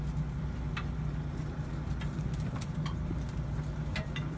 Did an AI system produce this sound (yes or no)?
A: no